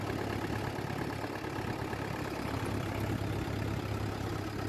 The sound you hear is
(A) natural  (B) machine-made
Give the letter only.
A